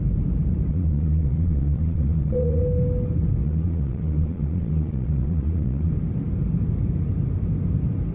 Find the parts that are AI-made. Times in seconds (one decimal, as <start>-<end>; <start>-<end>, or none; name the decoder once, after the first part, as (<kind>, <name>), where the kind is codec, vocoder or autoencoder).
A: 0.7-2.6 (vocoder, Vocos); 3.4-5.9